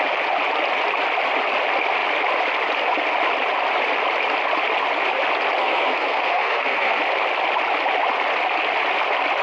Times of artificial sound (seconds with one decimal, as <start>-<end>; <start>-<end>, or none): 5.6-7.0